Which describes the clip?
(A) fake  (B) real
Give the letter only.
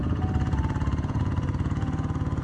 A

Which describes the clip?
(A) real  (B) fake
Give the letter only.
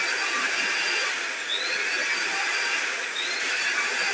A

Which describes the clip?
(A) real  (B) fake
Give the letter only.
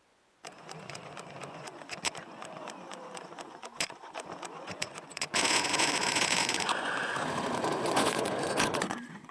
B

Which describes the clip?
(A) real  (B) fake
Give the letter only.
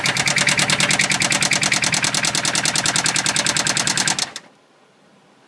A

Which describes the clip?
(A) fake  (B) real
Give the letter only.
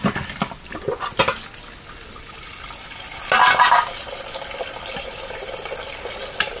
B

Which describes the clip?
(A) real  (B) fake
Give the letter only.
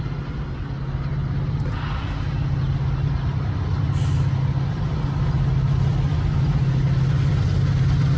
A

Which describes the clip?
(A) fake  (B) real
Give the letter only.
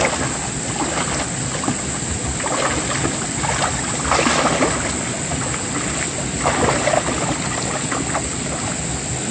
B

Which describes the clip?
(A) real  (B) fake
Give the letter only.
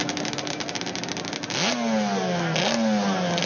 A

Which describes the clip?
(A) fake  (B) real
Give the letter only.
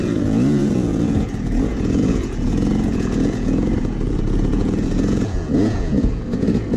A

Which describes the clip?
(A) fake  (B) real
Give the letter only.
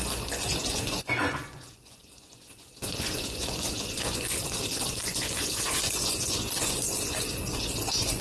A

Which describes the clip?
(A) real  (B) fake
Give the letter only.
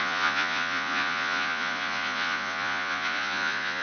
B